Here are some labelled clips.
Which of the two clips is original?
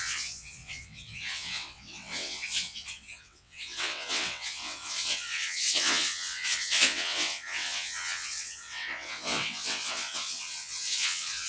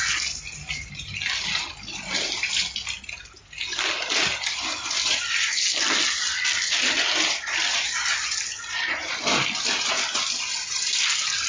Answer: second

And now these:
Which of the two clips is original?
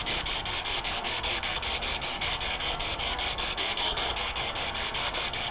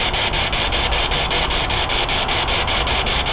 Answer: second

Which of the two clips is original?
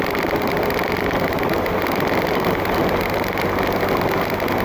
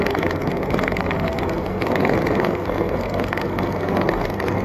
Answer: first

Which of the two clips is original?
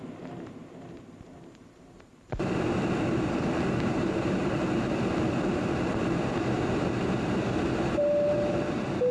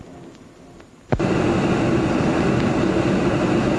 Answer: second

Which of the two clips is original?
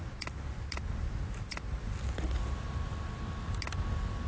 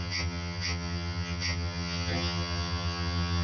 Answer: first